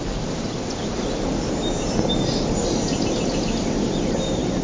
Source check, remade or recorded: recorded